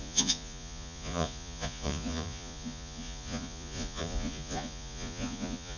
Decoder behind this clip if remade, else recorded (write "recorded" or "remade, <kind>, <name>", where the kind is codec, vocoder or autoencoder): remade, vocoder, Vocos